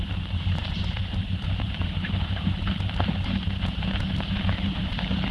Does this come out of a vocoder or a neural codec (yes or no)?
yes